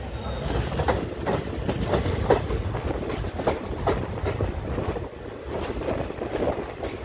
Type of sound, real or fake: real